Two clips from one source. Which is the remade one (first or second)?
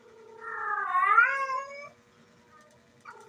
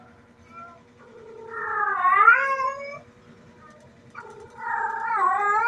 second